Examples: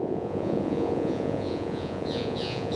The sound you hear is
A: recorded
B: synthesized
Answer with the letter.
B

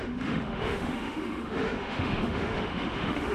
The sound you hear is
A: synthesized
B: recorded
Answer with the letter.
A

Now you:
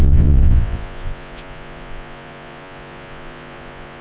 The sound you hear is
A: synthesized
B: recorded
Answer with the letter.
A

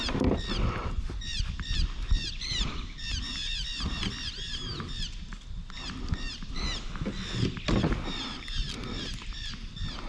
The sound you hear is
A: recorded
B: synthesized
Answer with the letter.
A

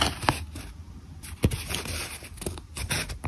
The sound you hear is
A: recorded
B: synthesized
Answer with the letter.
A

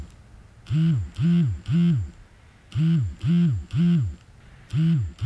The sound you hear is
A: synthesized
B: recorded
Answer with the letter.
B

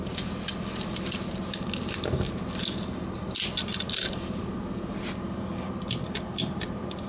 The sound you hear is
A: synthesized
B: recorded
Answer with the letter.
B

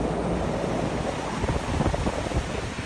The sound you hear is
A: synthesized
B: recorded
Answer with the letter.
B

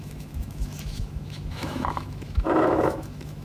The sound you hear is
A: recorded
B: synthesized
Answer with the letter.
B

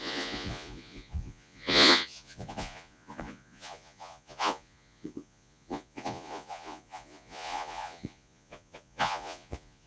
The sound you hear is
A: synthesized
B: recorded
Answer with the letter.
A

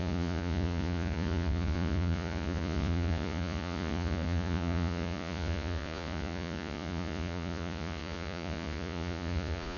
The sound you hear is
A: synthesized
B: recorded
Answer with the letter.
A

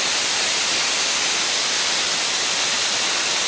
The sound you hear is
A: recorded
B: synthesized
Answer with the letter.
A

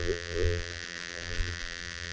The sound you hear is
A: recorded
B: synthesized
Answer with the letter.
B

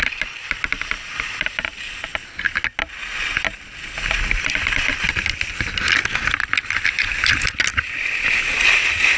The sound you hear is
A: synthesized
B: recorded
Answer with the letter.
B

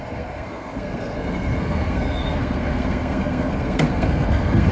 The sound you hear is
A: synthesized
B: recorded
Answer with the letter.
A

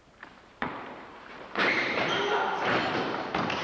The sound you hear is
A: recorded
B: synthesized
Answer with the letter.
B